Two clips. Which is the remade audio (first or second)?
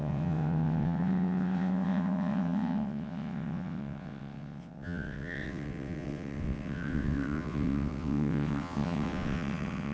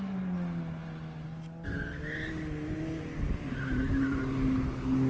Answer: first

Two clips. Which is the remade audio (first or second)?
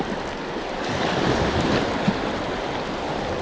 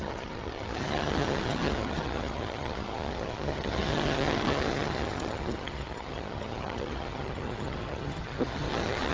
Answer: second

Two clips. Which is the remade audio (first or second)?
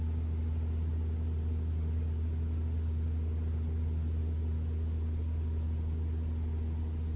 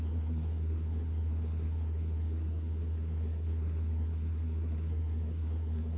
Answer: second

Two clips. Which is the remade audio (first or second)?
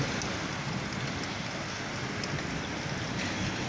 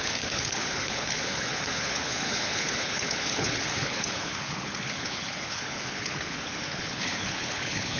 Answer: second